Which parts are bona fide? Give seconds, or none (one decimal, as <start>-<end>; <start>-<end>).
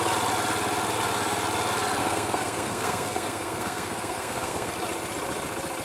0.0-2.0; 4.7-5.8